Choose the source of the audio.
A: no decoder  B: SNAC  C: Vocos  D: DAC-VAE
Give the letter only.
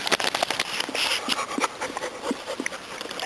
A